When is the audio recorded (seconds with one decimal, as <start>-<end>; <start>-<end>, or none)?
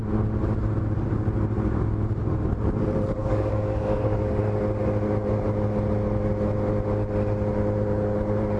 0.0-3.2; 4.4-8.6